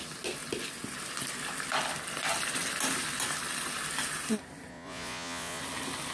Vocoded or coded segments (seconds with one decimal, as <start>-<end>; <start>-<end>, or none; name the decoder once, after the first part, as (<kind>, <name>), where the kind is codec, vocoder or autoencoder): 4.7-5.6 (vocoder, Vocos)